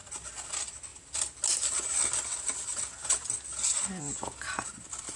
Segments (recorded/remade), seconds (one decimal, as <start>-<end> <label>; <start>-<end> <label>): 0.0-5.2 recorded